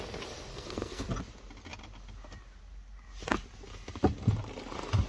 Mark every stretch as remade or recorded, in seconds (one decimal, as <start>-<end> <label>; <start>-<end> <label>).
0.0-0.5 recorded; 0.5-1.1 remade; 1.1-5.1 recorded